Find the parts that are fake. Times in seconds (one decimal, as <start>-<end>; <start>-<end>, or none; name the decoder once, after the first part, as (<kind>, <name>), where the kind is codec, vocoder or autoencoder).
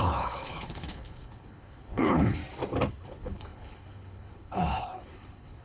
0.0-2.4 (codec, HILCodec); 2.9-5.6